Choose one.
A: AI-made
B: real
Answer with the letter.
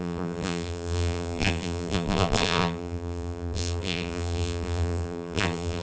A